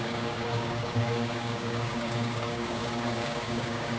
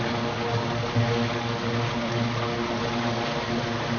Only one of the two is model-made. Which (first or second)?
first